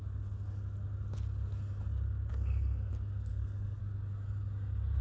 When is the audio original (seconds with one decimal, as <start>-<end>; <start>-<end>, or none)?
0.0-2.3; 2.9-3.3; 3.8-5.0